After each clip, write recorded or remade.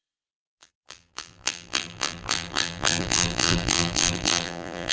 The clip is remade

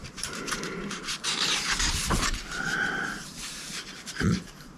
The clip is remade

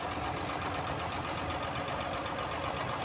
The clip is recorded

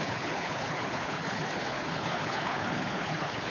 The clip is remade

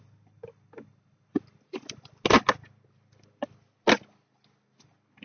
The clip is recorded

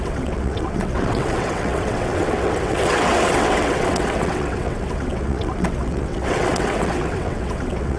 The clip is remade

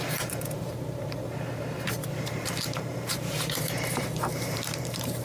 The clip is remade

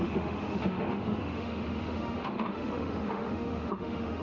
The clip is remade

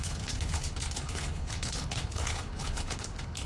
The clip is remade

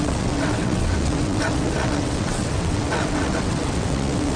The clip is remade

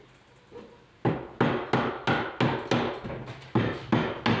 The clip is recorded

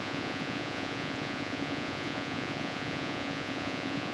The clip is remade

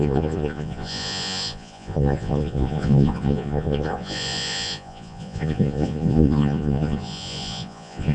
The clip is remade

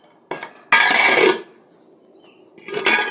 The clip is recorded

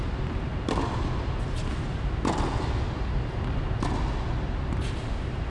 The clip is recorded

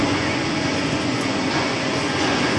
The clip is remade